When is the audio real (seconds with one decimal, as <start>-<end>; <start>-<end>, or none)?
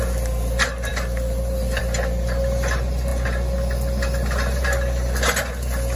0.0-6.0